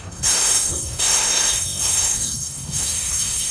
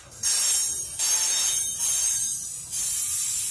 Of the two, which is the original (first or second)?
second